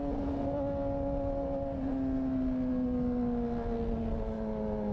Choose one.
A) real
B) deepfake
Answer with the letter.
A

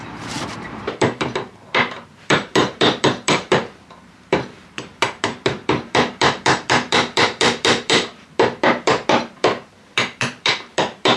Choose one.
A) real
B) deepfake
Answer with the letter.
B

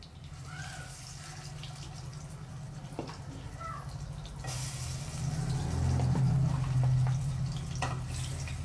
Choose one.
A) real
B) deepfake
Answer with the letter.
A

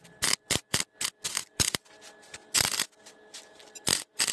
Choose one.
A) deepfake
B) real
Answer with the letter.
B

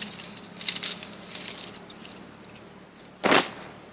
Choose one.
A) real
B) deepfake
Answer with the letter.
A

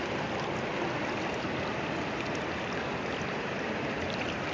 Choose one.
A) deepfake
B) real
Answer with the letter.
B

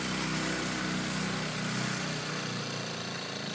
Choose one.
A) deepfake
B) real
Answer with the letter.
B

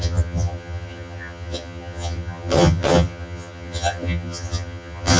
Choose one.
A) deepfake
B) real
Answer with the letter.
A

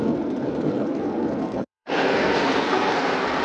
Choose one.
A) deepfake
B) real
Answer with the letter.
A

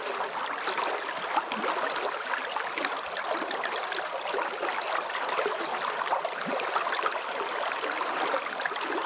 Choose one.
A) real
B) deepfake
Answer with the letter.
A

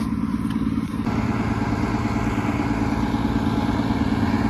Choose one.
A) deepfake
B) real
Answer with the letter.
B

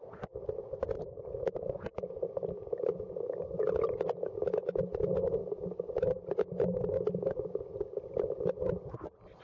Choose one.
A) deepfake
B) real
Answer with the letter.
B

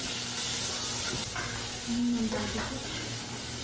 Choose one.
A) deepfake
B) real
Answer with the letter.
B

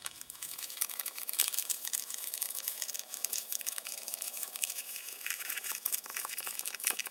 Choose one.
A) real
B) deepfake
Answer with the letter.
B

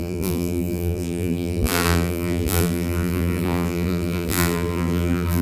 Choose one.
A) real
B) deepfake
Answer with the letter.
B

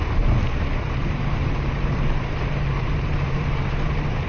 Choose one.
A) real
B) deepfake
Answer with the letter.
B